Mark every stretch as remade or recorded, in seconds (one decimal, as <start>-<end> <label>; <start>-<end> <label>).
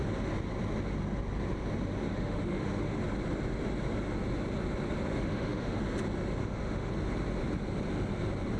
0.0-2.1 recorded; 2.1-3.0 remade; 3.0-5.1 recorded; 5.1-5.8 remade; 5.8-6.4 recorded; 6.4-6.9 remade; 6.9-8.6 recorded